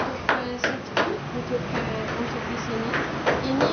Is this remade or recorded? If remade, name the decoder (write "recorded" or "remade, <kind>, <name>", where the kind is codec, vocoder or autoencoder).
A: recorded